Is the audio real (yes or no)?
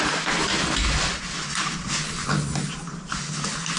yes